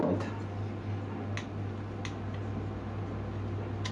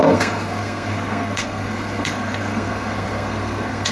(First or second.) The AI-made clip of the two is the second